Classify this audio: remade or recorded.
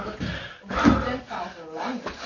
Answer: recorded